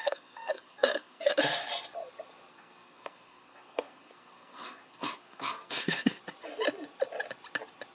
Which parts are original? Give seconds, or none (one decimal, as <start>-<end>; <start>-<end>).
1.3-2.5; 6.2-7.9